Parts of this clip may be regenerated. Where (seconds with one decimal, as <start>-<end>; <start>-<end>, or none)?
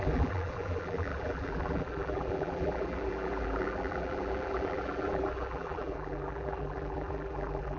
0.0-7.8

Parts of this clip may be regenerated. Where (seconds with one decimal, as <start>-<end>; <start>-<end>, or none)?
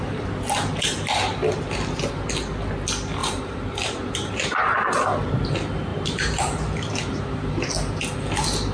3.2-4.3; 5.9-7.5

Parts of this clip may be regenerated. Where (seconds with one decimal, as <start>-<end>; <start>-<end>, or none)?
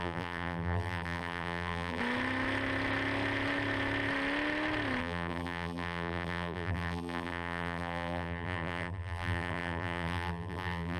0.0-2.0; 5.0-11.0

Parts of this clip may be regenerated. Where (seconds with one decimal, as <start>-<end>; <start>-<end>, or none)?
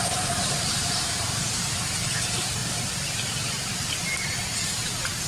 0.0-5.3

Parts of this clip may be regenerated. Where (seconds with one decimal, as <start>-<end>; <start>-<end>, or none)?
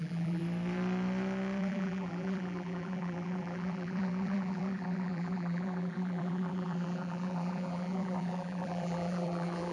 0.0-0.4; 1.6-9.7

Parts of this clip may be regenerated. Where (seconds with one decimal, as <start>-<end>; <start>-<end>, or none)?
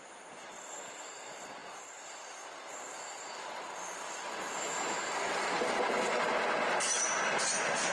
none